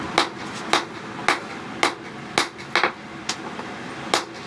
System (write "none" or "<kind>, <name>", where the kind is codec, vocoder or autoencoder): none